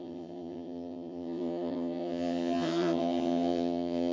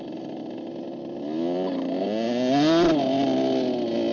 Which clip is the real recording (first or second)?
second